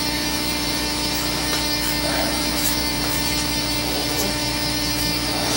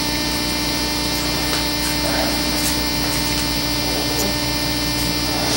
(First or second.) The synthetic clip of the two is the first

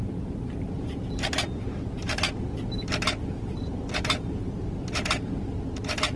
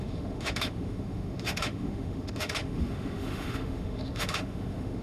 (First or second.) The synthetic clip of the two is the second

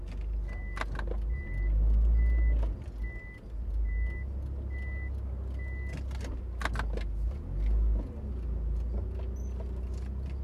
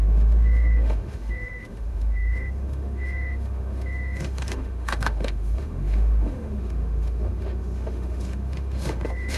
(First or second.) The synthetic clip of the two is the second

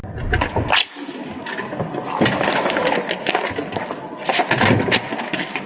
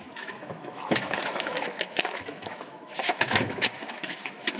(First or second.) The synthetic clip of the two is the second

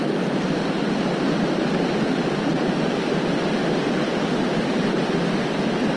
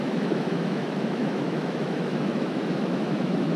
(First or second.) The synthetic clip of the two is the second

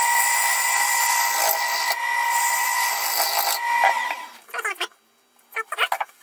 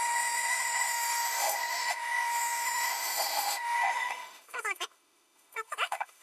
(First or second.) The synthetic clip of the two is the second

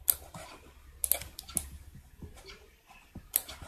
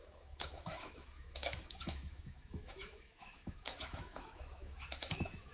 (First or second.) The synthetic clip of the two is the second